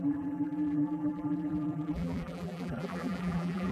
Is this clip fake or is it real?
fake